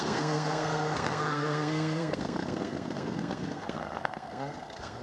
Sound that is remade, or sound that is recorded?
remade